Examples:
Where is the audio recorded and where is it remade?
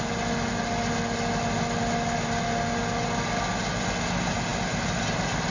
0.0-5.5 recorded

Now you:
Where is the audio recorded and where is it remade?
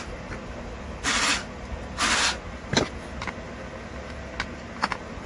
0.0-5.3 recorded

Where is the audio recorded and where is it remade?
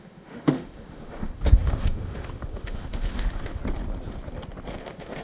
0.0-3.6 remade; 3.6-4.7 recorded; 4.7-5.2 remade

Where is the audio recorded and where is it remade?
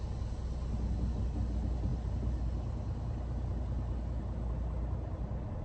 0.0-5.6 recorded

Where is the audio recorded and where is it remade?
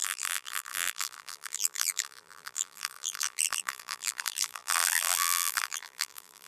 0.0-6.5 remade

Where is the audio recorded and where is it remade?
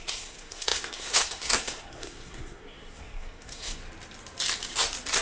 0.0-3.8 remade; 3.8-5.2 recorded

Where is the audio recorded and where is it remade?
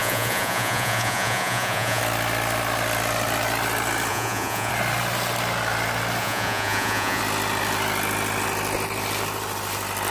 0.0-2.0 remade; 2.0-4.1 recorded; 4.1-4.7 remade; 4.7-6.2 recorded; 6.2-7.2 remade; 7.2-10.1 recorded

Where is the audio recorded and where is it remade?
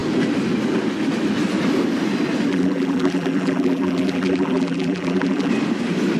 0.0-2.5 recorded; 2.5-5.5 remade; 5.5-6.2 recorded